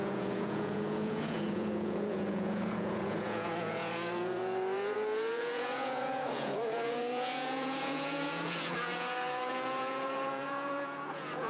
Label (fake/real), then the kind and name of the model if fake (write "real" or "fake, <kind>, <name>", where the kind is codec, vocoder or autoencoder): fake, vocoder, Vocos